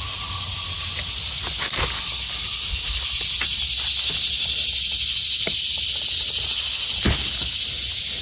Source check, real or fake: real